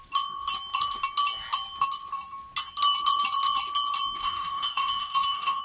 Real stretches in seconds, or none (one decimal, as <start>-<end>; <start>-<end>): 0.0-4.2